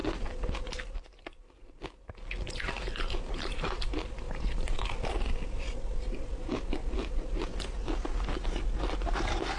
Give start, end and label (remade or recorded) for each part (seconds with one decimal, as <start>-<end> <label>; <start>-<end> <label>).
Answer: 0.0-9.6 recorded